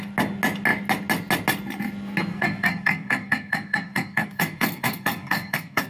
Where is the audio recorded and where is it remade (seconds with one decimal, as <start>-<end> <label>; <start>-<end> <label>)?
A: 0.0-2.3 recorded; 2.3-5.9 remade